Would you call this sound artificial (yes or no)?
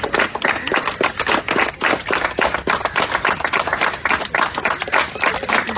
no